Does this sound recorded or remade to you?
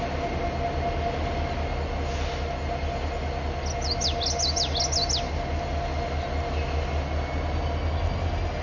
recorded